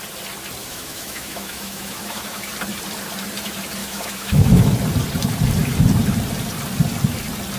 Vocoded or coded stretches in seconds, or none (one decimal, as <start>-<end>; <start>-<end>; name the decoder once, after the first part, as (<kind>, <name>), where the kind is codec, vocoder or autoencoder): 0.6-2.5 (autoencoder, DAC-VAE); 3.8-4.7